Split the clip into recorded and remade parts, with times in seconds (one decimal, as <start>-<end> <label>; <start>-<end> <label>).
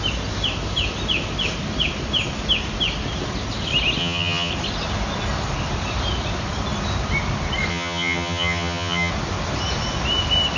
0.0-4.0 recorded; 4.0-4.5 remade; 4.5-7.7 recorded; 7.7-9.1 remade; 9.1-10.6 recorded